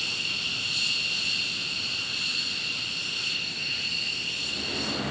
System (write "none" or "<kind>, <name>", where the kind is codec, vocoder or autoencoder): none